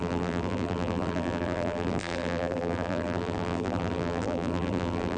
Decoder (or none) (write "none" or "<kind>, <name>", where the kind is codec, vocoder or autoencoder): vocoder, BigVGAN v2